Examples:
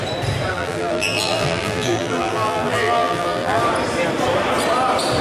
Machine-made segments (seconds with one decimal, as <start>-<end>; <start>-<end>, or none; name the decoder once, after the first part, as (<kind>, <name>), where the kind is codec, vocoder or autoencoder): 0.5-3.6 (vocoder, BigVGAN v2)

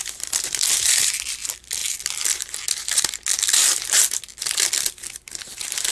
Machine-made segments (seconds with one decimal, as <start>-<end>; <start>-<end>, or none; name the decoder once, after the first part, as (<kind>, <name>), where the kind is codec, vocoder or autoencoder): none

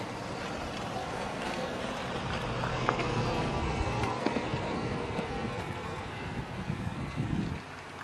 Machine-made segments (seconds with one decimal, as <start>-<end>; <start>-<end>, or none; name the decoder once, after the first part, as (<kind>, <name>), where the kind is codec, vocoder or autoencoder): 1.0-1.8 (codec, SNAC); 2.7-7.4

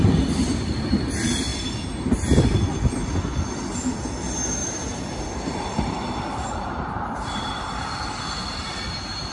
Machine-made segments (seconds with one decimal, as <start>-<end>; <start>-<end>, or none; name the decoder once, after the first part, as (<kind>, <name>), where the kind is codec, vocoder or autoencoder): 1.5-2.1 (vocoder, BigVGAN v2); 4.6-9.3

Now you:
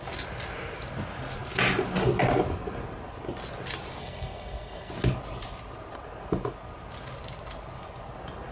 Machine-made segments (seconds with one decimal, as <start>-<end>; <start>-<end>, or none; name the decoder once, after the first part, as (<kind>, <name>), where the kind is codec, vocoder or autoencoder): 4.0-4.9 (codec, SNAC)